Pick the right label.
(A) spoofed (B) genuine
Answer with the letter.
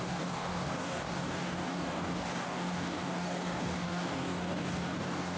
A